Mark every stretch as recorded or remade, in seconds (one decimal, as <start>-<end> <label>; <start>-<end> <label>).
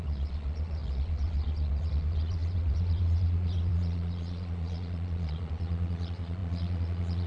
0.0-7.3 remade